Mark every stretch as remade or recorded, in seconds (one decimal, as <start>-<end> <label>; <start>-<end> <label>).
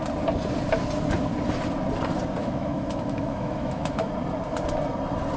0.0-2.4 recorded; 2.4-4.1 remade; 4.1-5.4 recorded